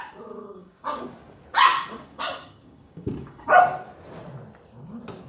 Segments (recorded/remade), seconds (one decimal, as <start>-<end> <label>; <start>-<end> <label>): 0.0-0.4 recorded; 0.4-1.0 remade; 1.0-1.7 recorded; 1.7-3.6 remade; 3.6-5.3 recorded